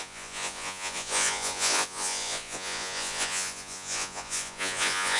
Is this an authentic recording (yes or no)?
no